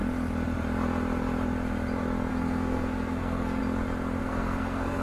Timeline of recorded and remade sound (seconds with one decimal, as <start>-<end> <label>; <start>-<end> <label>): 0.0-2.3 recorded; 2.3-3.6 remade; 3.6-4.2 recorded; 4.2-5.0 remade